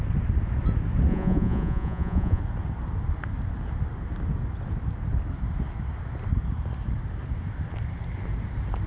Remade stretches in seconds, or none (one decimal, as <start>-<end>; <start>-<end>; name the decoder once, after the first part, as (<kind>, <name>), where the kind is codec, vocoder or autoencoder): 1.1-2.4 (vocoder, Vocos)